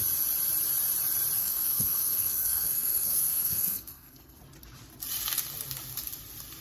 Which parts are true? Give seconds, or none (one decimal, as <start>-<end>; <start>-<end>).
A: 0.0-1.4; 4.4-6.6